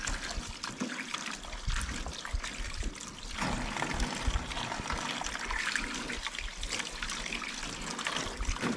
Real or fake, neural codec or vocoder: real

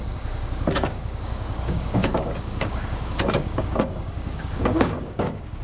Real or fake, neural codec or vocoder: fake, codec, DAC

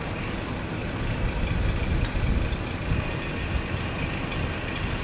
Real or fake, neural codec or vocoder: real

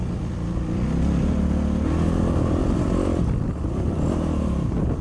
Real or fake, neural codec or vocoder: real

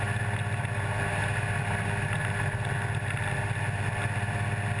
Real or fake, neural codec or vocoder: real